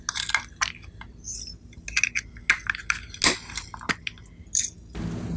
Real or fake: real